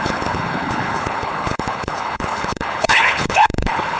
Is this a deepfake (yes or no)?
yes